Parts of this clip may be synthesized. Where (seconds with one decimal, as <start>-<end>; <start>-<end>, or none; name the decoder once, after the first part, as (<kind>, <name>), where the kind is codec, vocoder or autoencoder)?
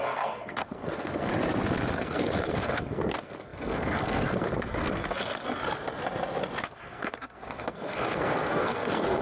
0.0-1.3 (codec, SNAC); 1.9-5.6; 6.6-9.2